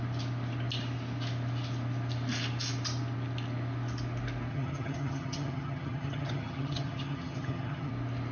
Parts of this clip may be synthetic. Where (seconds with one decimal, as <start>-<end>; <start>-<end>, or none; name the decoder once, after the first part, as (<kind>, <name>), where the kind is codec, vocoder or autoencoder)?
4.5-7.9 (vocoder, HiFi-GAN)